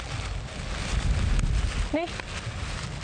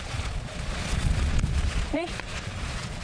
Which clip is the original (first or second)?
first